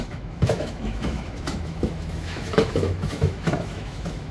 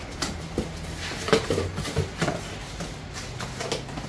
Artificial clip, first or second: first